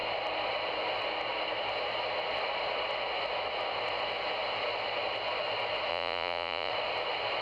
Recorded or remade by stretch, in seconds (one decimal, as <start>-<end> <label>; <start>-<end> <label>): 0.0-5.9 recorded; 5.9-6.7 remade; 6.7-7.4 recorded